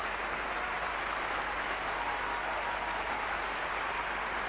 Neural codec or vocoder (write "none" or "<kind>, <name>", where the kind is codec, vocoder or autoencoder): none